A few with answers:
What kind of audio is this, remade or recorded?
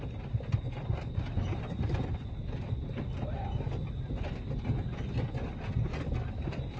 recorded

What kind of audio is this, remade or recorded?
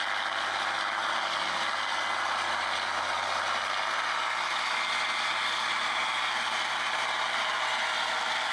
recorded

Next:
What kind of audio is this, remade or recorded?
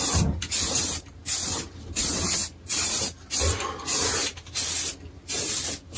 recorded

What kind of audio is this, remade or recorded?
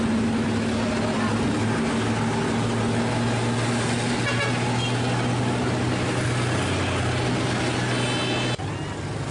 recorded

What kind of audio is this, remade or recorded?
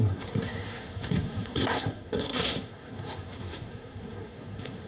remade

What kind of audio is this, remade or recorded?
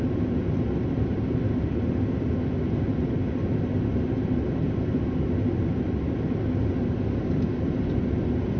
recorded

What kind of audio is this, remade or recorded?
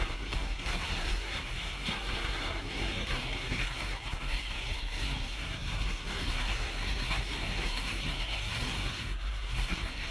remade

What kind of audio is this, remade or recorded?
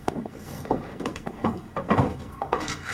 remade